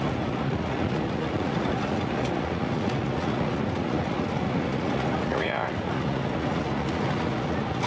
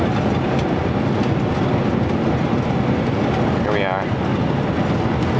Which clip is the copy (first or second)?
first